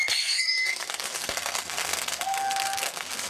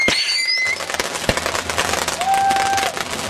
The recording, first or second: second